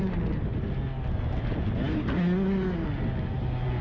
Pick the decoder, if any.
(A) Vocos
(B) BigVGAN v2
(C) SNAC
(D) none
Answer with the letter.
D